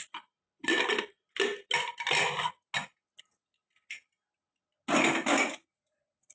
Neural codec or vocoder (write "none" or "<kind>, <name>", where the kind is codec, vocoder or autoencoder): none